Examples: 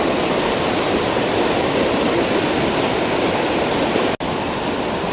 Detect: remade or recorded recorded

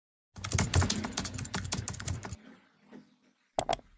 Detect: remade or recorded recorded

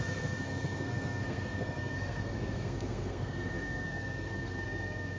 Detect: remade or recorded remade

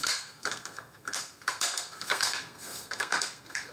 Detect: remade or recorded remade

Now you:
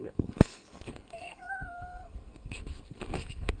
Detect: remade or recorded remade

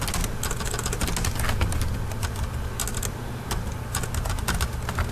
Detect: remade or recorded recorded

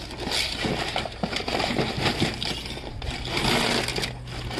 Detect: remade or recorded recorded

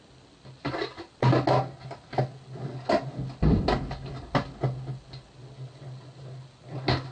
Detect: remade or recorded recorded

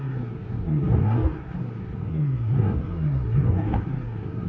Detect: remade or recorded remade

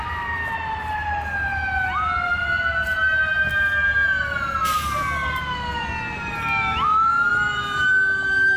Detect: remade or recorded recorded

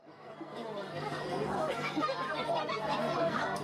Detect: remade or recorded remade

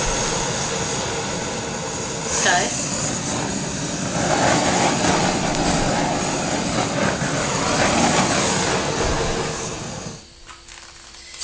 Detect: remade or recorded recorded